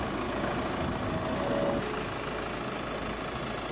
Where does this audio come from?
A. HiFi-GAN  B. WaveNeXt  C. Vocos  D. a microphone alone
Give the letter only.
D